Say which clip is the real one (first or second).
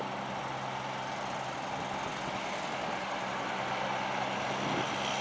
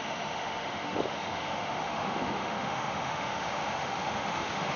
first